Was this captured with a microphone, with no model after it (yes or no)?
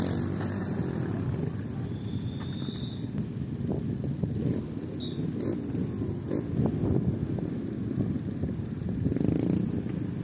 yes